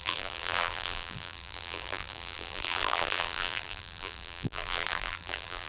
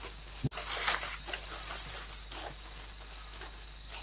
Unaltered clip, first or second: second